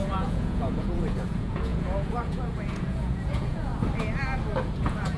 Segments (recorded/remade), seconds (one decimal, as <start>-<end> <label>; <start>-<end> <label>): 0.0-3.7 remade; 3.7-4.6 recorded; 4.6-5.2 remade